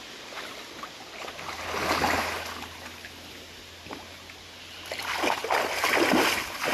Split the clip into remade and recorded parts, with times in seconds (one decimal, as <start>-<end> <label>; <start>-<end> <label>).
0.0-6.7 recorded